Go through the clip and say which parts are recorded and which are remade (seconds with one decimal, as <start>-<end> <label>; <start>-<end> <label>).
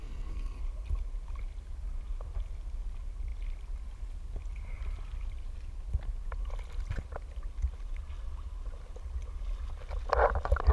0.0-0.6 remade; 0.6-10.7 recorded